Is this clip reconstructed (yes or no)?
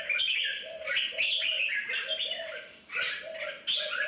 no